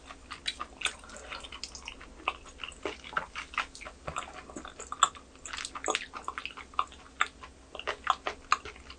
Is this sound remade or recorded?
recorded